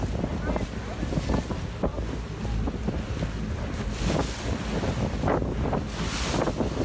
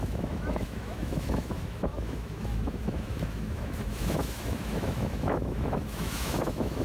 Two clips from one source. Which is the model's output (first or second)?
second